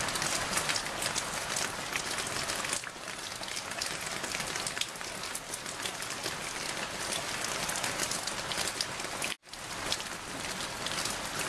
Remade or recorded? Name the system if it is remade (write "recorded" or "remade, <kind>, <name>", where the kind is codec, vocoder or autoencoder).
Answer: recorded